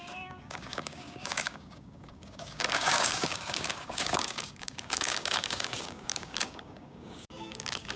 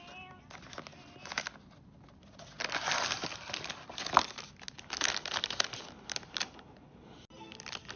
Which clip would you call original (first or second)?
second